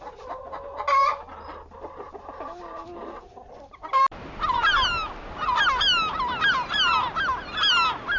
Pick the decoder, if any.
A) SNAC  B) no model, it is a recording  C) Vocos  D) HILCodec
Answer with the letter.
B